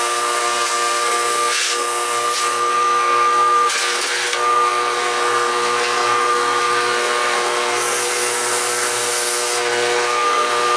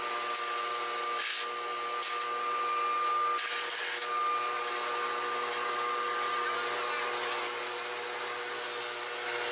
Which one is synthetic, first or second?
first